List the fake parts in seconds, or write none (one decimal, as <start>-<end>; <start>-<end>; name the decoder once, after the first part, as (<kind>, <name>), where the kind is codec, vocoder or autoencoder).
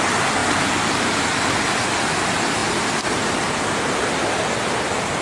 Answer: 0.4-1.4 (vocoder, BigVGAN v2)